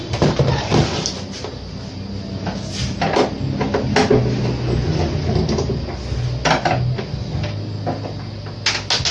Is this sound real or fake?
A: real